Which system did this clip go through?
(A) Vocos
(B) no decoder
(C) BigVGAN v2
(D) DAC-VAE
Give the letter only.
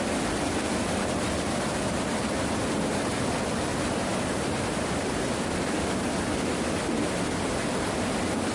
B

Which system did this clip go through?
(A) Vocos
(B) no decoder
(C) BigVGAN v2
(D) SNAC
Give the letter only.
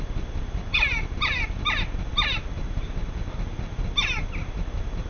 B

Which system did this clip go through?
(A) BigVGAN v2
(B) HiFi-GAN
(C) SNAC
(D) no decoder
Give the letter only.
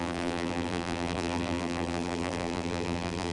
A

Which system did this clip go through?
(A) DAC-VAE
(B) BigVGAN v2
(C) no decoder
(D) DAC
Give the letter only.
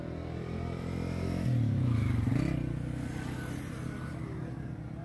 C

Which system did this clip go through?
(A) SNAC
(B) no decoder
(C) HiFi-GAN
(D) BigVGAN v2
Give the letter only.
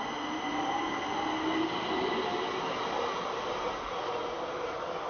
B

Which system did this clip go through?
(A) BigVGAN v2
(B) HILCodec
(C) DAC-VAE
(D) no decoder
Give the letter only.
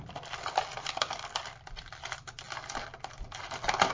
A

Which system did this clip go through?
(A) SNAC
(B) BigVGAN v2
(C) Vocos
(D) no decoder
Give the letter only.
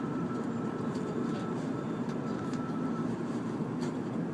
B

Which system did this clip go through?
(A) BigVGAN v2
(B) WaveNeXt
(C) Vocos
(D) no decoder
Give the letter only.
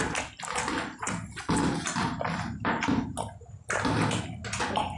D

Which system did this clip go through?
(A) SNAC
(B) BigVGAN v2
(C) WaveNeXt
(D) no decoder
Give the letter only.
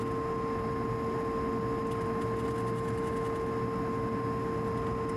D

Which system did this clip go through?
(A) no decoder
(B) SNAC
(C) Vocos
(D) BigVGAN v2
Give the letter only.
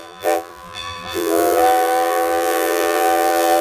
D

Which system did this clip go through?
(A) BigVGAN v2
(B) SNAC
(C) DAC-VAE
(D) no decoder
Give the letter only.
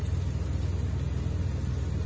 D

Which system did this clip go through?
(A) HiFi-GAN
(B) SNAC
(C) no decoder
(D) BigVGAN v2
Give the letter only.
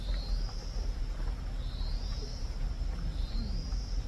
D